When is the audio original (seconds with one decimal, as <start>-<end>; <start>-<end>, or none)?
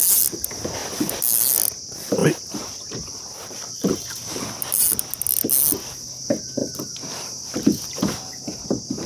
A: 0.0-2.2; 4.5-6.6